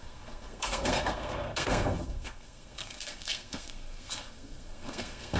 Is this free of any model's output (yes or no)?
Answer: no